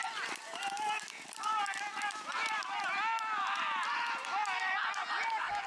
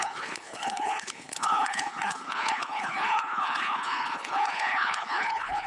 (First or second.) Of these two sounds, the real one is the first